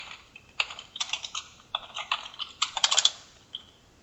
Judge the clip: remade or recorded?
remade